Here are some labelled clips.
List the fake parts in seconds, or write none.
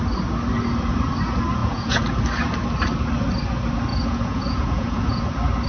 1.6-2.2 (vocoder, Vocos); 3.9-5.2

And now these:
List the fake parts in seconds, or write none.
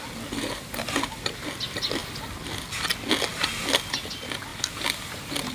none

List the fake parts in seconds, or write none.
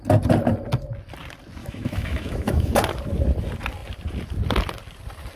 1.6-2.7 (autoencoder, DAC-VAE)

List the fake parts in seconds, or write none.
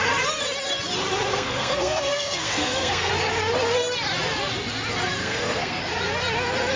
1.3-3.1 (codec, SNAC); 5.2-5.8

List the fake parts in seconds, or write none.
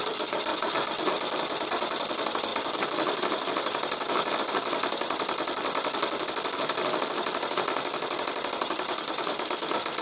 none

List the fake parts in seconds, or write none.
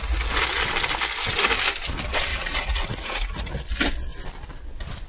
2.3-3.5 (vocoder, Vocos)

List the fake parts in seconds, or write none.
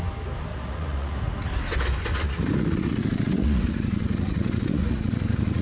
0.5-1.5 (vocoder, Vocos); 2.1-5.6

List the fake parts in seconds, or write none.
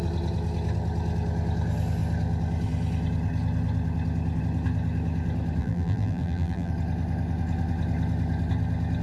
5.6-6.7 (vocoder, BigVGAN v2)